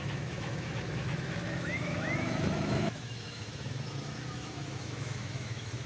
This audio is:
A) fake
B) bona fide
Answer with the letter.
A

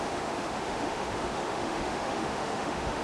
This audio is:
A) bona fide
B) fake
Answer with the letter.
B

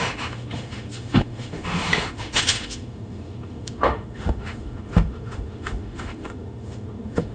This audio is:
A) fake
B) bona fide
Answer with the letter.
A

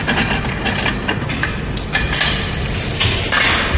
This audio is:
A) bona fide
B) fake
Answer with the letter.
A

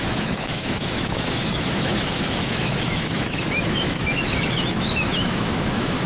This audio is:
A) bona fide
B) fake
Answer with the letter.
B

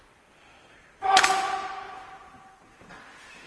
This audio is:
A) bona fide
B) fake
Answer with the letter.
A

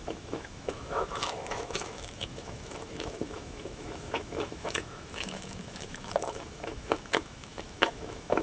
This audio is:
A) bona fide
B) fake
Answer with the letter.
B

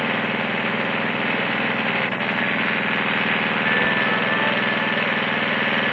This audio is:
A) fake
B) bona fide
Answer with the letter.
B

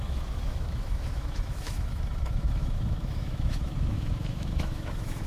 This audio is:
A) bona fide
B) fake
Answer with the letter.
B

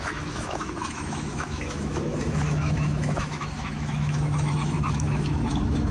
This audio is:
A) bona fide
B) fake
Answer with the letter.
B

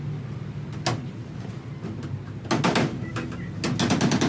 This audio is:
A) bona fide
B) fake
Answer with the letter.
A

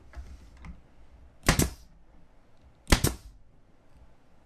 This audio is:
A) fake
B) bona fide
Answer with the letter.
B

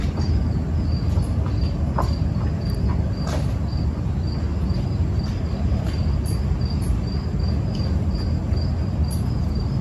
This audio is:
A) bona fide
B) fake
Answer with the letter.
A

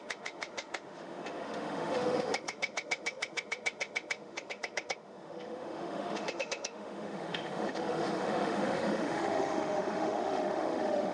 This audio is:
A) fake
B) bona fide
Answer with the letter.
A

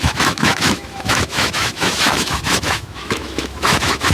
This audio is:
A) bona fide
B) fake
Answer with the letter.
B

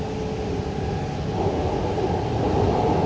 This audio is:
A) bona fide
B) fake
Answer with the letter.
A